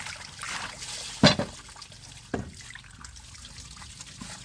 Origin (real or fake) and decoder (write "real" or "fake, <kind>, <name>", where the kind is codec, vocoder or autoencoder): real